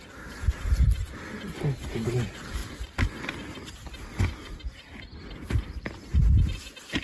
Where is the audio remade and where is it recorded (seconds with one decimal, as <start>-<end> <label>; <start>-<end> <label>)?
0.0-7.0 recorded